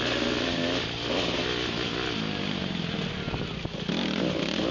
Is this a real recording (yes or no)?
yes